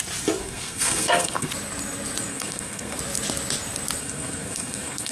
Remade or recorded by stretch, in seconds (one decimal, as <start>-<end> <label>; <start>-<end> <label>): 0.0-0.4 recorded; 0.4-1.5 remade; 1.5-2.3 recorded; 2.3-3.0 remade; 3.0-4.0 recorded; 4.0-5.1 remade

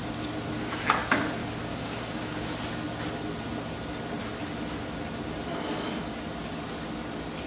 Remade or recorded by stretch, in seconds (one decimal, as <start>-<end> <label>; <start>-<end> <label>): 0.0-1.4 recorded; 1.4-2.4 remade; 2.4-7.5 recorded